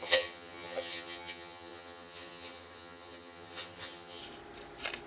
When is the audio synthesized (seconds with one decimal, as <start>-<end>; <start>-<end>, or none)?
0.0-4.2